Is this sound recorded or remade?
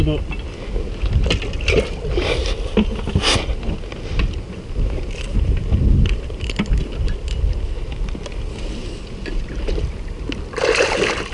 recorded